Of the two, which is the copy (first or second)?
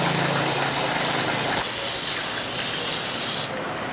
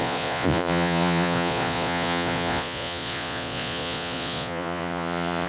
second